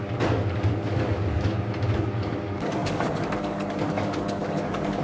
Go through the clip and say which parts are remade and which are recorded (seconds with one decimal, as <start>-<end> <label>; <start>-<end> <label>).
0.0-1.5 remade; 1.5-2.0 recorded; 2.0-5.0 remade